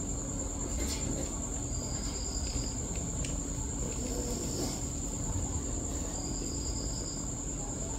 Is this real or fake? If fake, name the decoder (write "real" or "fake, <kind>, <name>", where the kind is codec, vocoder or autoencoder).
real